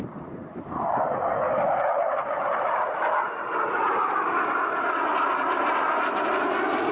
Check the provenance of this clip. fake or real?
real